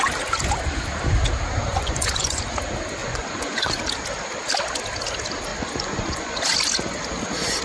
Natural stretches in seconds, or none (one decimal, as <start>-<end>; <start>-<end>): 0.0-1.7; 2.4-3.0; 3.8-5.5; 6.4-7.6